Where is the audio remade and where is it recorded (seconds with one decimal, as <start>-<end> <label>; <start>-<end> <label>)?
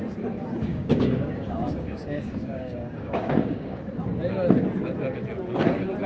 0.0-0.4 recorded; 0.4-3.9 remade; 3.9-6.1 recorded